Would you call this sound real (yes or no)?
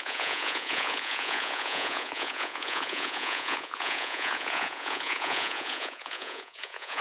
no